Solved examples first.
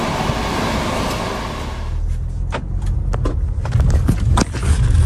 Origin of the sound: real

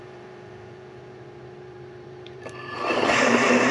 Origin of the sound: fake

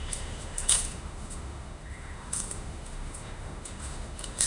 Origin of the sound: fake